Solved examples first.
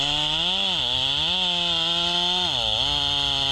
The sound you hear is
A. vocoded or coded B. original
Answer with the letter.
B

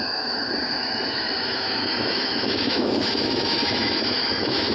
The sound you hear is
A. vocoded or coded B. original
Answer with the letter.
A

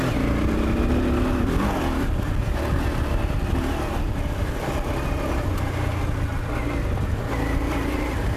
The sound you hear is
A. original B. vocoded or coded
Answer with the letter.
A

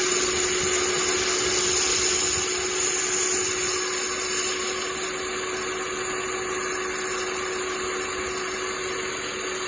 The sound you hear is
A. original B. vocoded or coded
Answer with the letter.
A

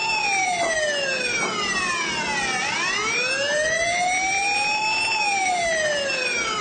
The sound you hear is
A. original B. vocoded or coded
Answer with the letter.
A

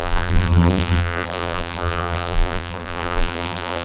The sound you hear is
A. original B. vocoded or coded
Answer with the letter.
B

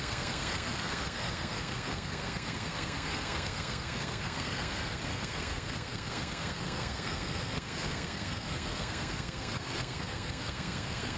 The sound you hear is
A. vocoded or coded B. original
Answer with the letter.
A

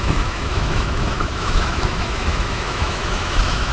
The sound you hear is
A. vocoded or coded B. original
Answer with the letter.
A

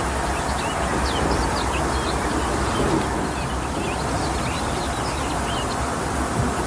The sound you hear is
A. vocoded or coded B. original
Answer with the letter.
B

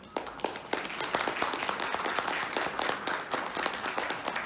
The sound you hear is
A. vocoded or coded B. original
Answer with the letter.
B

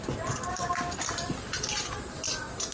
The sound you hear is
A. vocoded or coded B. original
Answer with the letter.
B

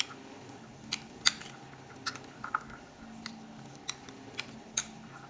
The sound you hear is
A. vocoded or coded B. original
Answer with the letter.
B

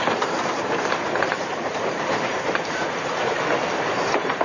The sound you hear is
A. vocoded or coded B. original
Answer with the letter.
A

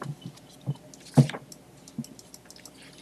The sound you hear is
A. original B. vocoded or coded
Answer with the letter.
A